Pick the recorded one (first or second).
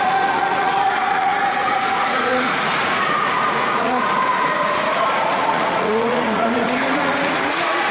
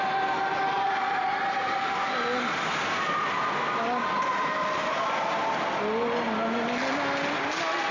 second